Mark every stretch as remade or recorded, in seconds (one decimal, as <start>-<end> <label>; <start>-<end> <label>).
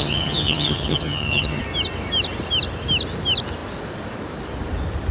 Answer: 0.0-1.6 remade; 1.6-5.1 recorded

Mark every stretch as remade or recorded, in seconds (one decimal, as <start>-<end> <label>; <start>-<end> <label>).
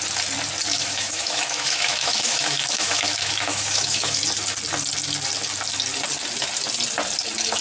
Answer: 0.0-0.7 recorded; 0.7-4.2 remade; 4.2-7.6 recorded